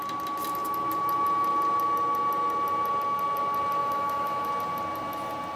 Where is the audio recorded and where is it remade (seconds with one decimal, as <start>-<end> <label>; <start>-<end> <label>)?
0.0-3.8 recorded; 3.8-4.5 remade; 4.5-5.6 recorded